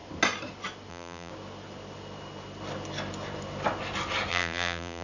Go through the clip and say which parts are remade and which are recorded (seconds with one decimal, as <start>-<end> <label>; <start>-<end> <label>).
0.0-0.9 recorded; 0.9-1.3 remade; 1.3-4.3 recorded; 4.3-5.0 remade